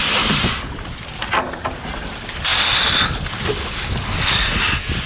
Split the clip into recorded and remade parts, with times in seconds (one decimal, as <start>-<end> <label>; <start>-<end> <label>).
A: 0.0-1.2 remade; 1.2-2.5 recorded; 2.5-3.3 remade; 3.3-5.1 recorded